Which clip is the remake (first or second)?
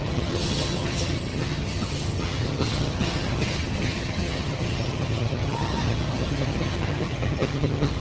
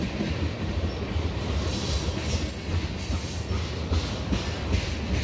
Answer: first